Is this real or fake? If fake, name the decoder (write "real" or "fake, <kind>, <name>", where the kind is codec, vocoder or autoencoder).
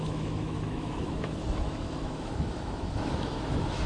fake, autoencoder, DAC-VAE